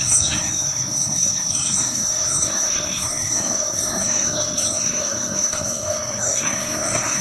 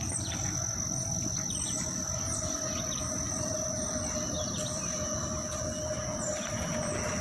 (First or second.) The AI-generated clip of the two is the first